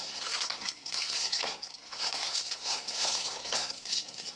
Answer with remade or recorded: remade